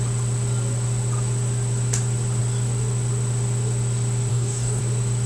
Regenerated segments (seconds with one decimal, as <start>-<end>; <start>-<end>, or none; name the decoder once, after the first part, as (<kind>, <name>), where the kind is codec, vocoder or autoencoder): 4.3-4.8 (codec, DAC)